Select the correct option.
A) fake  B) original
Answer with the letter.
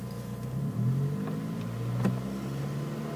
B